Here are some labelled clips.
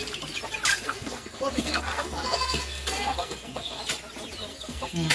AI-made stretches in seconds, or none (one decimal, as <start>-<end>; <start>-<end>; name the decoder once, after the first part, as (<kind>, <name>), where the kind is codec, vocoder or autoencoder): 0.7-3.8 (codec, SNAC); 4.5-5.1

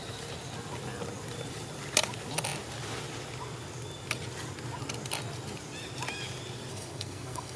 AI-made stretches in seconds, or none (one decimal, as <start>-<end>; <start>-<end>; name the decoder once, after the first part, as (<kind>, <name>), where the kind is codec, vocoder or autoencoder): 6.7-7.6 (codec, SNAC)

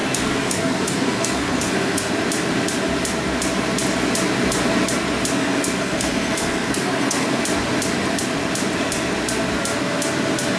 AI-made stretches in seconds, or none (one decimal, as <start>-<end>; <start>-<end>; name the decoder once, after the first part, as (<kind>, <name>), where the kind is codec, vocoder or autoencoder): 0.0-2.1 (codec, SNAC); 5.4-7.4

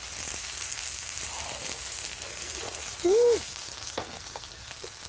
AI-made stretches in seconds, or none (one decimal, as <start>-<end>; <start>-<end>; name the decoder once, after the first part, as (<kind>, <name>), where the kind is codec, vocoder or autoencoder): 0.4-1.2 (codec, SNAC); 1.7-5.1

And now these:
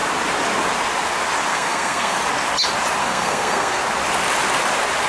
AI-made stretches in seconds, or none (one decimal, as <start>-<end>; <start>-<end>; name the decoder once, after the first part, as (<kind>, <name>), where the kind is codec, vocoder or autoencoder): 1.5-2.2 (codec, SNAC); 3.0-3.8

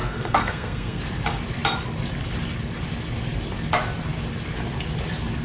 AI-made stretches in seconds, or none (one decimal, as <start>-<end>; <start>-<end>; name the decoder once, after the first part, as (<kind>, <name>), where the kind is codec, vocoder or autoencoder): 0.0-1.0 (codec, SNAC)